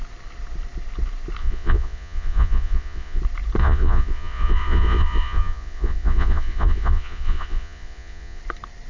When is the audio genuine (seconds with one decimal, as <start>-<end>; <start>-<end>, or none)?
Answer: 0.0-1.4; 3.2-3.6; 8.4-8.9